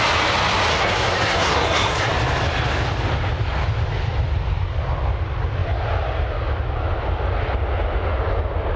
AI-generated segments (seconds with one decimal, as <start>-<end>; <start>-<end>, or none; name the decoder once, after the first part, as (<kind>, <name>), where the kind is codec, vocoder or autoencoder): 0.7-2.1 (codec, SNAC)